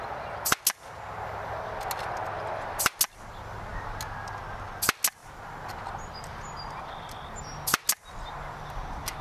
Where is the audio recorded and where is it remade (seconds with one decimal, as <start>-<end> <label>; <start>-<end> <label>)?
0.0-9.2 recorded